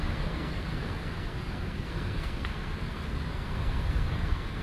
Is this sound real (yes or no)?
no